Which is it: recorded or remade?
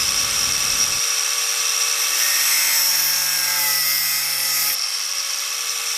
remade